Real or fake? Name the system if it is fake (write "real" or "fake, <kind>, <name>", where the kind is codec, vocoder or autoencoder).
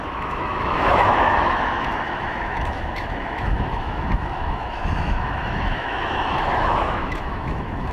fake, autoencoder, DAC-VAE